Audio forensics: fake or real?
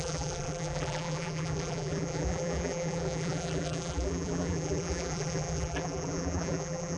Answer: fake